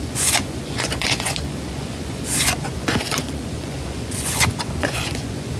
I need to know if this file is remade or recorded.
remade